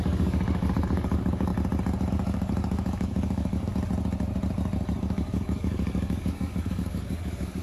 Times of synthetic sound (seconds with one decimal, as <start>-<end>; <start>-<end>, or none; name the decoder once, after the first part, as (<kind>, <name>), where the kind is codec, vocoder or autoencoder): 0.0-1.5 (codec, DAC); 2.1-3.7; 5.0-7.6